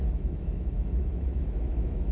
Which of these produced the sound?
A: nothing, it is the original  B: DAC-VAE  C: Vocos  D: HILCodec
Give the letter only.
B